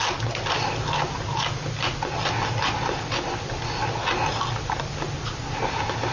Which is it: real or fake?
real